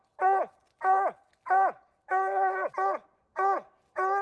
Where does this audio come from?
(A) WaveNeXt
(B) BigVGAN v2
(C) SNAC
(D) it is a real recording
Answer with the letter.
D